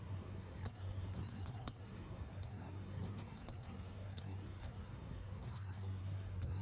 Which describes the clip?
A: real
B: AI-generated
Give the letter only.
B